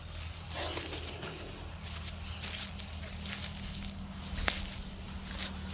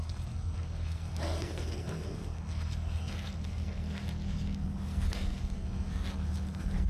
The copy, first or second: second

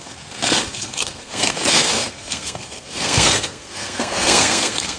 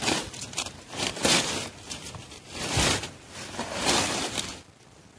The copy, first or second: first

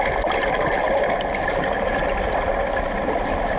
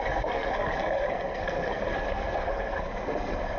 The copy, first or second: second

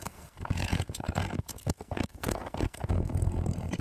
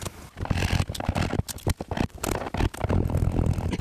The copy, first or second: first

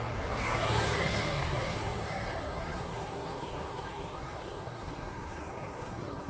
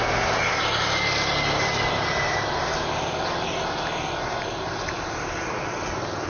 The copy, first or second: first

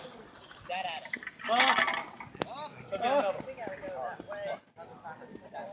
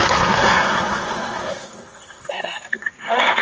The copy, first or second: second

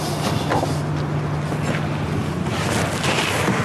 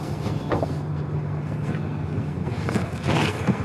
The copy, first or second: second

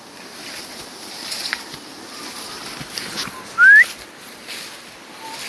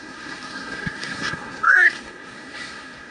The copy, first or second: second